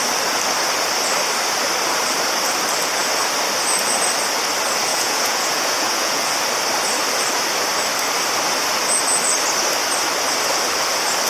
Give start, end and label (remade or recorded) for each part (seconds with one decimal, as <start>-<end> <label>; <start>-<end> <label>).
0.0-4.9 recorded; 4.9-6.3 remade; 6.3-11.3 recorded